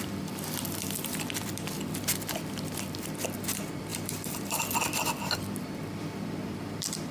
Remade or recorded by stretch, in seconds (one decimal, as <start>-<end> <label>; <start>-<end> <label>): 0.0-7.1 remade

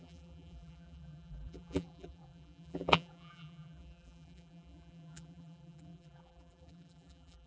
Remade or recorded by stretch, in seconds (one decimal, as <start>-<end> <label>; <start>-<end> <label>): 0.0-7.5 remade

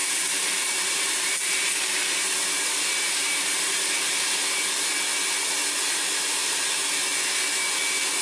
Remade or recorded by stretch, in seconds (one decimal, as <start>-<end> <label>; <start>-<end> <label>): 0.0-3.9 remade; 3.9-8.2 recorded

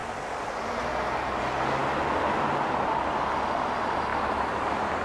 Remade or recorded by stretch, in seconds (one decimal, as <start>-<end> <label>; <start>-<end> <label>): 0.0-4.1 recorded; 4.1-5.0 remade

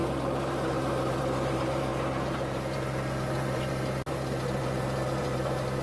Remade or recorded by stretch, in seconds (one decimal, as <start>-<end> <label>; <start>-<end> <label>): 0.0-5.8 remade

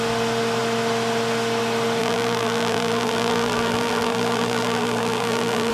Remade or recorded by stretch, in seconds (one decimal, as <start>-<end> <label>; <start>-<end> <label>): 0.0-2.0 recorded; 2.0-5.7 remade

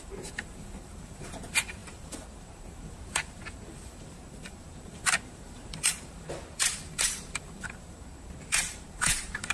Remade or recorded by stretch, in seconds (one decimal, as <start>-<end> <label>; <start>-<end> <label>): 0.0-9.5 remade